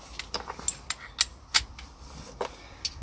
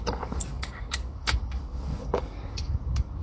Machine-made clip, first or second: second